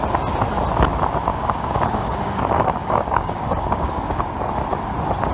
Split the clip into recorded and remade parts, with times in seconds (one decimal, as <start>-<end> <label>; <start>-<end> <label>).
0.0-1.3 recorded; 1.3-4.2 remade; 4.2-5.3 recorded